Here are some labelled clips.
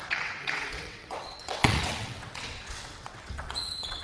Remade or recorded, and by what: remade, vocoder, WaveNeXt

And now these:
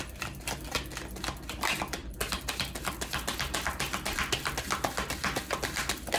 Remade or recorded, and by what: recorded